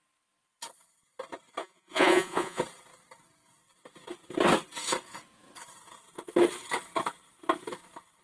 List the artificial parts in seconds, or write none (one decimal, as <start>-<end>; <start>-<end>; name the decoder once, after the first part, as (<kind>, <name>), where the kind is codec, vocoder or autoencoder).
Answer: 1.6-2.6 (vocoder, Vocos)